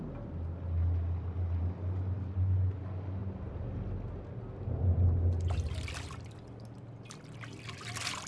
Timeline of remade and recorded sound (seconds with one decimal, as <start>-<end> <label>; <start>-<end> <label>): 0.0-8.3 recorded

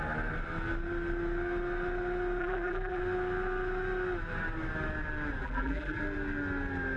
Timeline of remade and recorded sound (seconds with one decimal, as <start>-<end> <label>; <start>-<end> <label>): 0.0-2.4 recorded; 2.4-3.0 remade; 3.0-5.4 recorded; 5.4-6.0 remade; 6.0-7.0 recorded

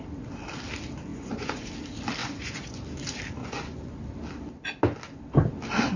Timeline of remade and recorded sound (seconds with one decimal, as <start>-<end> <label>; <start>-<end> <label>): 0.0-1.1 recorded; 1.1-1.7 remade; 1.7-2.2 recorded; 2.2-2.8 remade; 2.8-3.4 recorded; 3.4-3.9 remade; 3.9-6.0 recorded

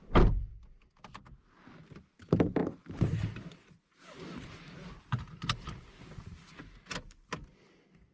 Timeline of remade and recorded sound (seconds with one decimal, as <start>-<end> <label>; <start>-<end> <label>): 0.0-8.1 recorded

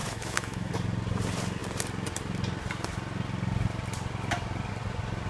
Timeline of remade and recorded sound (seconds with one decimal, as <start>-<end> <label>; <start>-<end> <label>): 0.0-0.7 remade; 0.7-5.3 recorded

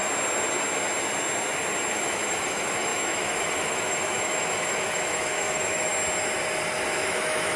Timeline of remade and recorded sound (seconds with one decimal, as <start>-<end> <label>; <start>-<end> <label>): 0.0-1.9 recorded; 1.9-5.9 remade; 5.9-7.0 recorded; 7.0-7.6 remade